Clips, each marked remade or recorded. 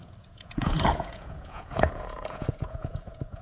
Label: remade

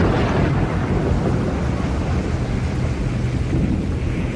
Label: recorded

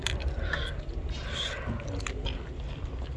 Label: recorded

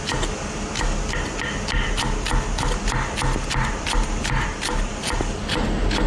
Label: recorded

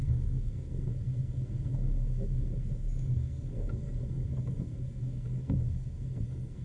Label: remade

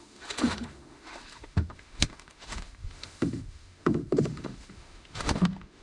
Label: remade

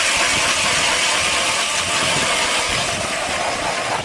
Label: recorded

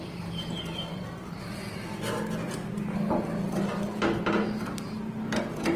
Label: recorded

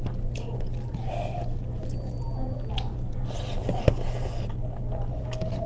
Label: recorded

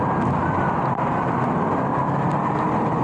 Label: recorded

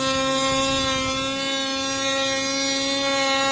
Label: recorded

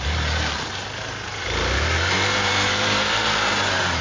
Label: remade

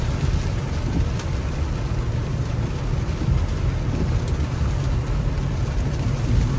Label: recorded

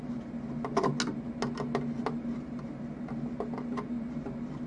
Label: recorded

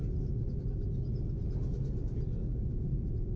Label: recorded